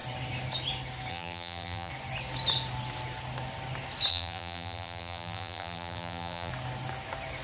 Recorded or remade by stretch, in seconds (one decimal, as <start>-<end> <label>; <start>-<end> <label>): 0.0-1.1 recorded; 1.1-1.9 remade; 1.9-4.1 recorded; 4.1-6.5 remade; 6.5-7.4 recorded